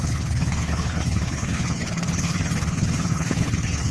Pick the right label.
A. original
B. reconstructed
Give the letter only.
B